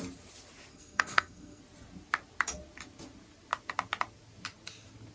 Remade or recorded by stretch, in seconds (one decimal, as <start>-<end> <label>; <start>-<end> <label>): 0.0-0.7 recorded; 0.7-1.6 remade; 1.6-5.1 recorded